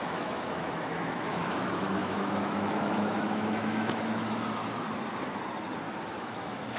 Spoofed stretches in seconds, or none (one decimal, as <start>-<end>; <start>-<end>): 0.0-4.6; 6.2-6.8